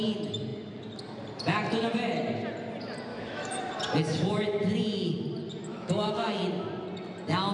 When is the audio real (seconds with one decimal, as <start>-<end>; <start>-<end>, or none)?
0.0-3.1; 3.6-5.7; 6.4-7.5